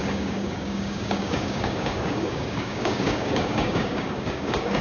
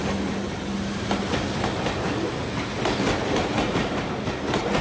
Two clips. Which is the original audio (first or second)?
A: second